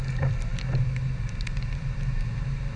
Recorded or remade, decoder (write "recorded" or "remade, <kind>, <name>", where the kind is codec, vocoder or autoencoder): recorded